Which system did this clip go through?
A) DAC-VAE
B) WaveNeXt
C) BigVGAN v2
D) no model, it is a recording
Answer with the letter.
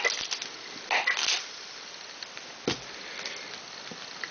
D